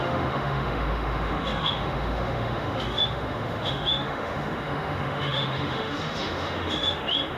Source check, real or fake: fake